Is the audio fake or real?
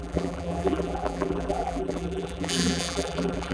fake